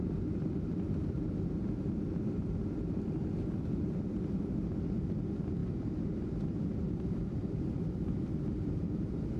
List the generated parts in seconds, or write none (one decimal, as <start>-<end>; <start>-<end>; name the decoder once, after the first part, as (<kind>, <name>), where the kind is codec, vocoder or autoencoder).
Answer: none